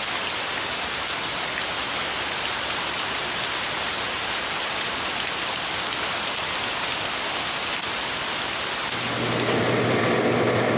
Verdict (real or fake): real